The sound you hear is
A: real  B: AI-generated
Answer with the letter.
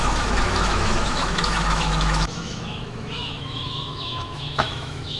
B